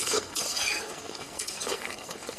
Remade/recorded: remade